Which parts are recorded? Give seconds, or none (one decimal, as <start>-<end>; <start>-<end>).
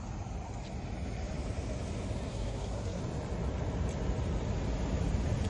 0.0-2.3; 3.0-5.5